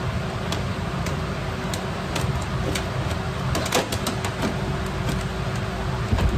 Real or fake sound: real